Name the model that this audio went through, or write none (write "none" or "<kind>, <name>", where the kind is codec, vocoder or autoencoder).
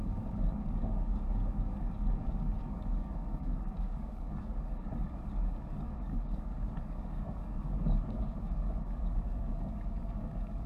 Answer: codec, DAC